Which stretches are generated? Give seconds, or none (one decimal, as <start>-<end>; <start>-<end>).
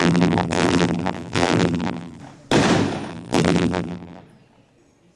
0.0-2.2; 3.1-4.2